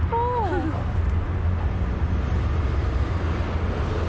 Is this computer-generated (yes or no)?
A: no